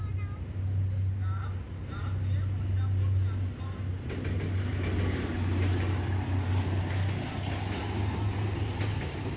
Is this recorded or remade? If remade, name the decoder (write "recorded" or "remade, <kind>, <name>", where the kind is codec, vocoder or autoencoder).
recorded